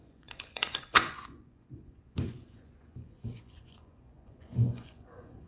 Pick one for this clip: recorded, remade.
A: remade